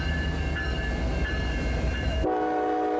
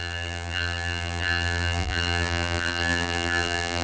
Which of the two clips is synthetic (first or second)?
second